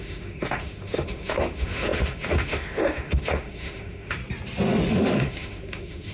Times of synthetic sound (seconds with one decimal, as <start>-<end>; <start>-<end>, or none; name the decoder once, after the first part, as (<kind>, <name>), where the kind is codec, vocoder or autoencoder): 0.0-4.2 (autoencoder, DAC-VAE); 4.9-6.1